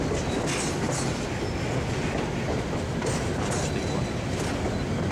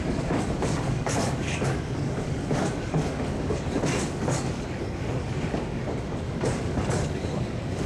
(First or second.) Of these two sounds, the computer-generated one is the second